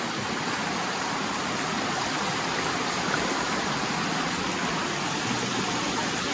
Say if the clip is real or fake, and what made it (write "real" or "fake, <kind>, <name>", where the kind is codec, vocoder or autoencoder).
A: real